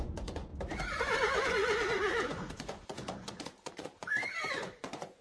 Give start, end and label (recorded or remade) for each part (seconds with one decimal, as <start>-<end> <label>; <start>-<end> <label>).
0.0-0.5 remade; 0.5-1.0 recorded; 1.0-5.2 remade